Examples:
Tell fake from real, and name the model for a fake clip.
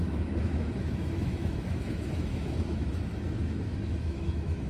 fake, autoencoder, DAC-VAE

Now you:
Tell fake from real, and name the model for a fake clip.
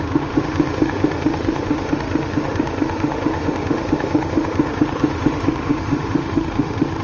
fake, autoencoder, DAC-VAE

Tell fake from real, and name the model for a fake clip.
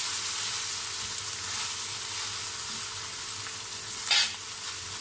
real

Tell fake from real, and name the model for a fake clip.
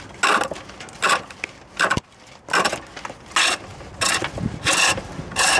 real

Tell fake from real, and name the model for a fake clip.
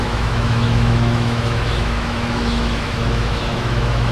fake, autoencoder, DAC-VAE